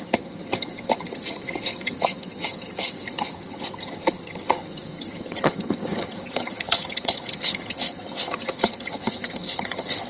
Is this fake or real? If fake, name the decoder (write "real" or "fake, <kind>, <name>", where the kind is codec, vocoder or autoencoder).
fake, vocoder, HiFi-GAN